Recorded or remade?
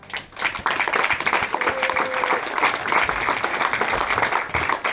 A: recorded